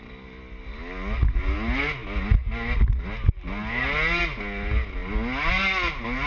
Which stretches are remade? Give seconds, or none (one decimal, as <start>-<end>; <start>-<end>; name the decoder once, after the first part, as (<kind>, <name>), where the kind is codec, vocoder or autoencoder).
none